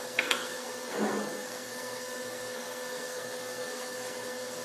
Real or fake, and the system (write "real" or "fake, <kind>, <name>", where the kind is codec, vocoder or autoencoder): fake, codec, SNAC